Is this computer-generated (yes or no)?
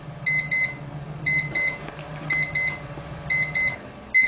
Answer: no